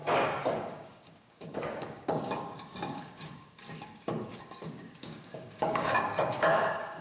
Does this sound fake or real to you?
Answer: fake